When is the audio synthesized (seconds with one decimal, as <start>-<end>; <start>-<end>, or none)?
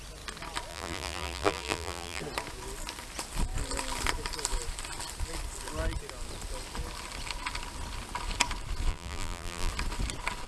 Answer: 0.7-2.2; 8.9-9.7